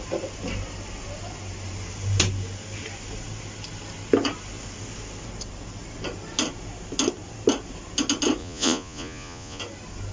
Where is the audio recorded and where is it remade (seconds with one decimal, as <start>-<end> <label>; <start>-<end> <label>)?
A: 0.0-8.4 recorded; 8.4-9.6 remade; 9.6-10.1 recorded